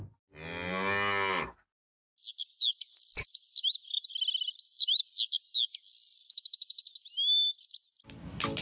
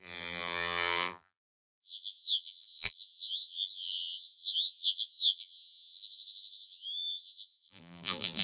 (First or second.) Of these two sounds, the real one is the first